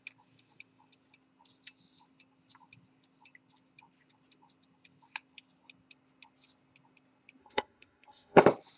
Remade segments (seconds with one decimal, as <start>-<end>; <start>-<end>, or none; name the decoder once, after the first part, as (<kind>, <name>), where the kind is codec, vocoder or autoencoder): 7.4-8.4 (codec, SNAC)